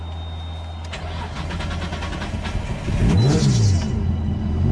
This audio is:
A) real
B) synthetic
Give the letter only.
A